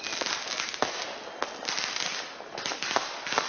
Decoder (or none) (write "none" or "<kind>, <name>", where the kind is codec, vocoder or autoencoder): none